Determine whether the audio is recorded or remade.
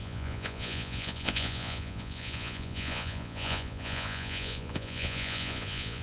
remade